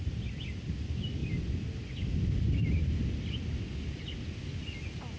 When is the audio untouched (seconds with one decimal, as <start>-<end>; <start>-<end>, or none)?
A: 0.0-5.2